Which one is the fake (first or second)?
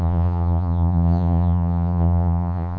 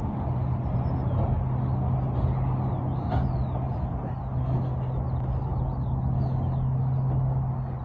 first